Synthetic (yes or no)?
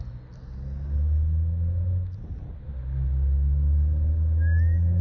no